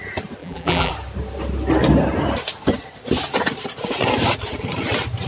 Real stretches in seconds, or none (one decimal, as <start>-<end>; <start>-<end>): 0.0-0.4; 0.9-5.3